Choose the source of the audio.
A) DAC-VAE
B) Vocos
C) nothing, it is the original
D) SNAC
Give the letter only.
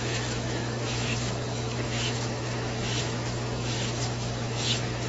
A